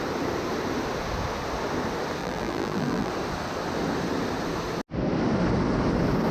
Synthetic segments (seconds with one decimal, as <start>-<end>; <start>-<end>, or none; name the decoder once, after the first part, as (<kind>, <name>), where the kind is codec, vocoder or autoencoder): 2.2-3.1 (vocoder, BigVGAN v2)